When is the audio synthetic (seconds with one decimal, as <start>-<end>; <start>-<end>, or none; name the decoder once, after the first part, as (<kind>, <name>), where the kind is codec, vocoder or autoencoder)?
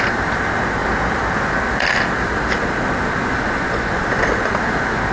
3.2-4.3 (vocoder, Vocos)